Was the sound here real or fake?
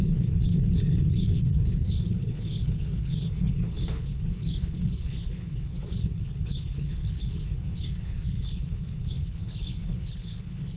fake